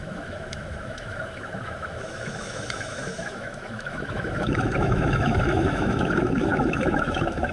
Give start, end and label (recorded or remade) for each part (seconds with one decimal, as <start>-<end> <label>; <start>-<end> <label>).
0.0-7.5 remade